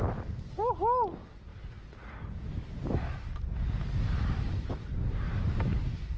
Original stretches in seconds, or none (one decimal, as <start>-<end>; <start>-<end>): 0.0-6.2